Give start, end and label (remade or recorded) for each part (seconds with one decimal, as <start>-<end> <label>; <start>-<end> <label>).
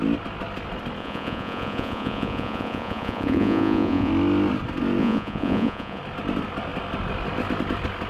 0.0-1.0 recorded; 1.0-4.1 remade; 4.1-5.0 recorded; 5.0-6.0 remade; 6.0-8.1 recorded